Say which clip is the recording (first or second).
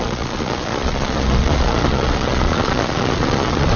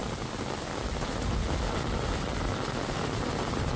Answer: second